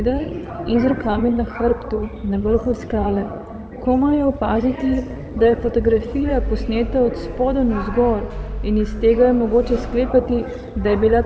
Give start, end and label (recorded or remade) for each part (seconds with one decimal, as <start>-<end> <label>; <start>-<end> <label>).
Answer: 0.0-6.3 remade; 6.3-10.1 recorded; 10.1-11.3 remade